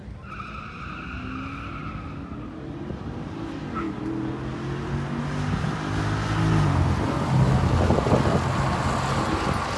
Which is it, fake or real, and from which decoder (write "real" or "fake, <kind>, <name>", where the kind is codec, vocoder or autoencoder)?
real